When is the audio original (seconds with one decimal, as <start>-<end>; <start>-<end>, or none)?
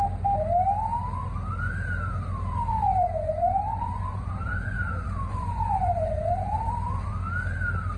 0.0-2.7; 7.1-8.0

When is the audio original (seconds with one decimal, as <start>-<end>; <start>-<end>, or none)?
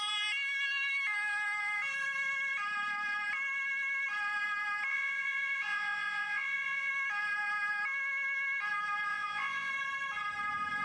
0.0-4.9; 6.9-9.1; 9.7-10.8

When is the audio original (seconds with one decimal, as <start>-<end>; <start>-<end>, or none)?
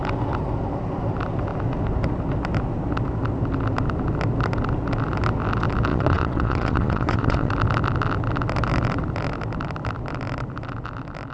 0.0-5.9; 7.5-11.3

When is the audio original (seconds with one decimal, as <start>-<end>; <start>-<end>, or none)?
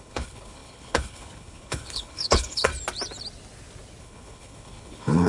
2.7-4.0